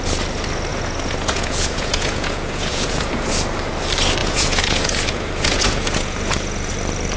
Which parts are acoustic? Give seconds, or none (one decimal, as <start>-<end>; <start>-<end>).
0.0-0.7; 3.3-4.2; 6.7-7.2